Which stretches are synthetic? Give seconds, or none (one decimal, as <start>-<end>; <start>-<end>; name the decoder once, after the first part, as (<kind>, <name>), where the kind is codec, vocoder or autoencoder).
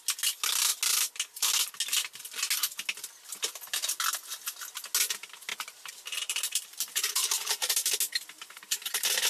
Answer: 5.5-7.9 (vocoder, BigVGAN v2)